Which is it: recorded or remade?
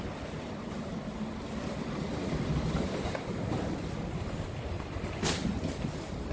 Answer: recorded